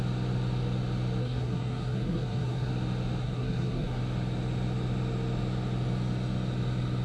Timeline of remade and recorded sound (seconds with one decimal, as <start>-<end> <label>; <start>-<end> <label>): 0.0-1.2 recorded; 1.2-2.7 remade; 2.7-3.2 recorded; 3.2-4.0 remade; 4.0-7.0 recorded

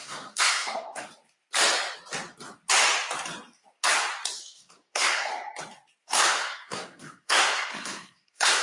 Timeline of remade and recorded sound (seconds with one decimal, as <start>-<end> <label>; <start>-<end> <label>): 0.0-1.1 remade; 1.1-4.4 recorded; 4.4-5.3 remade; 5.3-6.0 recorded; 6.0-8.6 remade

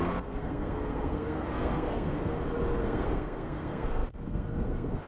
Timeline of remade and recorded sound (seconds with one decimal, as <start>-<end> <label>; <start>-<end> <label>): 0.0-2.3 remade; 2.3-2.8 recorded; 2.8-5.1 remade